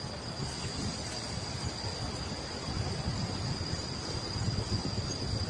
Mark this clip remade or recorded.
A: recorded